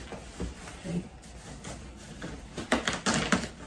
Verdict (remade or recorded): recorded